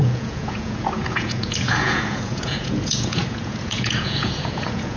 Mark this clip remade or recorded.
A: remade